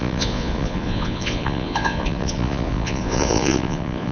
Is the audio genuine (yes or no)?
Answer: no